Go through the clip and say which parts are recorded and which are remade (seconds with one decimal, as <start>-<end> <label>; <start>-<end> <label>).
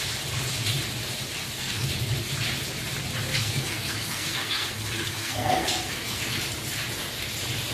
0.0-1.4 recorded; 1.4-1.9 remade; 1.9-3.3 recorded; 3.3-6.4 remade; 6.4-7.7 recorded